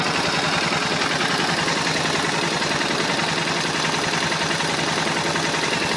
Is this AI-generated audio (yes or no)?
no